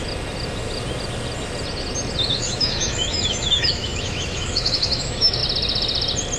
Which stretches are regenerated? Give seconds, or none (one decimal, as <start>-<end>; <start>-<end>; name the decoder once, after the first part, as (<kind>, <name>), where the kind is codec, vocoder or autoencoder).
2.3-5.4 (autoencoder, DAC-VAE)